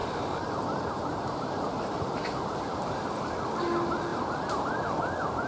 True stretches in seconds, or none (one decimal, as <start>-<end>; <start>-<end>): 3.3-4.1